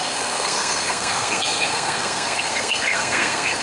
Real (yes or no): no